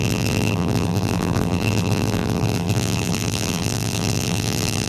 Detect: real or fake fake